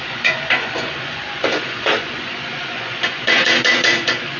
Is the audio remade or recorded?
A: remade